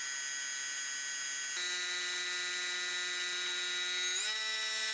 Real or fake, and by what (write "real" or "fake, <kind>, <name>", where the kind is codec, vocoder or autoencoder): real